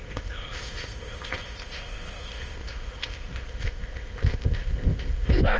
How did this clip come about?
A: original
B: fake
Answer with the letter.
B